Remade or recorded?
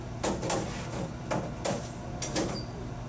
recorded